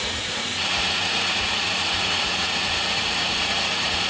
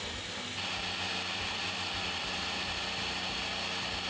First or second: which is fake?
first